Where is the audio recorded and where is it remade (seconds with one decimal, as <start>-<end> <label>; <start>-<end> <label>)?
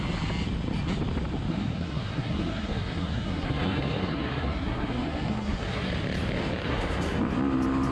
0.0-1.5 recorded; 1.5-5.9 remade; 5.9-6.6 recorded; 6.6-7.2 remade; 7.2-7.9 recorded